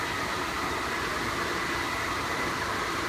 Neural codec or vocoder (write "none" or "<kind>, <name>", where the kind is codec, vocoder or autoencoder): none